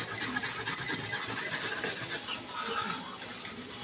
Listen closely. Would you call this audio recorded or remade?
recorded